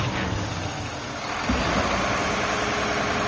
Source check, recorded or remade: recorded